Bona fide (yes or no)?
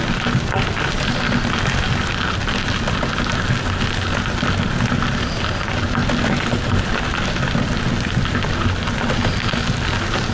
yes